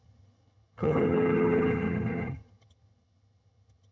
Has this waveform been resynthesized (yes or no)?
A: yes